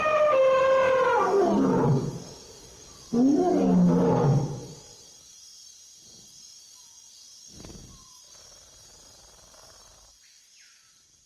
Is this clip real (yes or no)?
yes